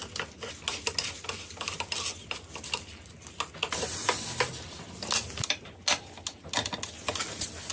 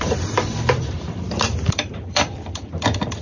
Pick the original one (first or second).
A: first